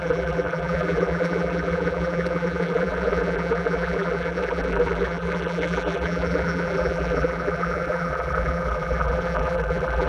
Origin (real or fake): fake